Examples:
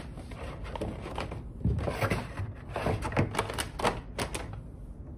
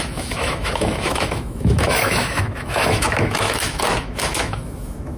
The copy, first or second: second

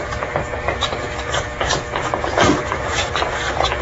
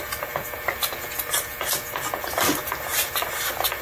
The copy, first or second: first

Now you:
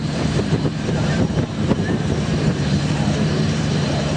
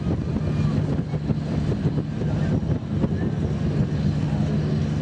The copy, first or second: first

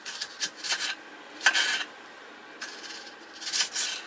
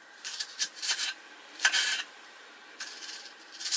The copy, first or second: second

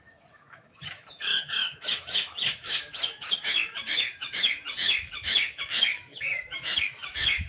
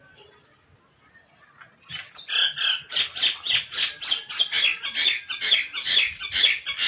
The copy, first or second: first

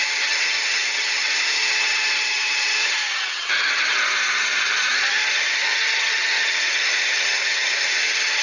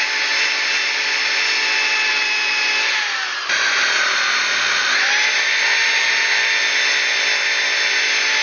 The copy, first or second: first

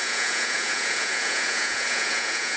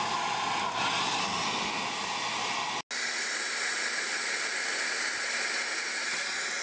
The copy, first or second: first